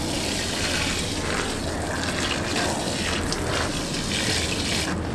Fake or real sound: real